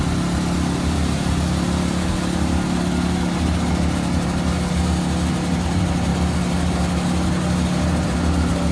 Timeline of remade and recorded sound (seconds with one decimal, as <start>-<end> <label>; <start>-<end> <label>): 0.0-8.7 recorded

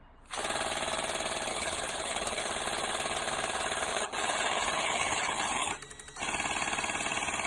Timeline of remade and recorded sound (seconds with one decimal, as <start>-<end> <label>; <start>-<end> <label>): 0.0-1.5 recorded; 1.5-2.4 remade; 2.4-3.9 recorded; 3.9-5.7 remade; 5.7-7.5 recorded

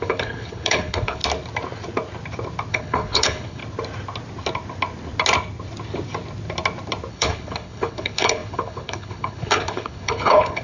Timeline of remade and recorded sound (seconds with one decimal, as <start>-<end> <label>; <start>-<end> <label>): 0.0-1.2 remade; 1.2-2.7 recorded; 2.7-3.6 remade; 3.6-7.1 recorded; 7.1-10.6 remade

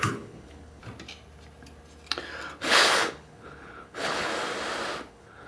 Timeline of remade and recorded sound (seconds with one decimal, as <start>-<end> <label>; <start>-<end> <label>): 0.0-0.8 remade; 0.8-2.6 recorded; 2.6-4.3 remade; 4.3-5.1 recorded; 5.1-5.5 remade

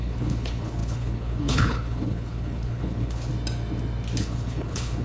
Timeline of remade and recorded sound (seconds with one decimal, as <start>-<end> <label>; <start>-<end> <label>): 0.0-3.3 remade; 3.3-4.2 recorded; 4.2-5.0 remade

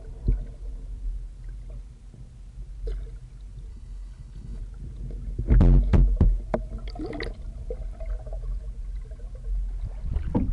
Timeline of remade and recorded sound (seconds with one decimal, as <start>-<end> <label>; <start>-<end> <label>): 0.0-3.7 recorded; 3.7-4.6 remade; 4.6-10.5 recorded